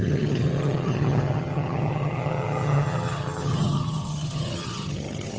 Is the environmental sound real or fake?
fake